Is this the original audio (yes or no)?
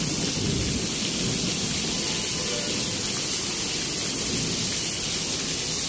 yes